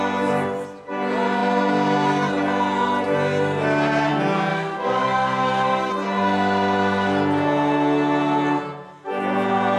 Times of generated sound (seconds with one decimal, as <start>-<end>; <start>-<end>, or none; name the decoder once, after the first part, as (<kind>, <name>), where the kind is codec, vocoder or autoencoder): 4.5-5.9 (codec, DAC)